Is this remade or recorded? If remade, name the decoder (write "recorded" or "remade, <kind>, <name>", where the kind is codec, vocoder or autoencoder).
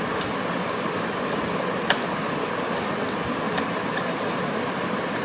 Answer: recorded